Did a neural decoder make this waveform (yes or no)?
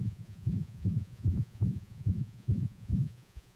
yes